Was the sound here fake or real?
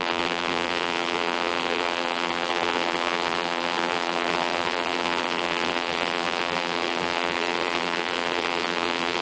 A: fake